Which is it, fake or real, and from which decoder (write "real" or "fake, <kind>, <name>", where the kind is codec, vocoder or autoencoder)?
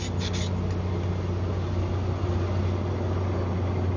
real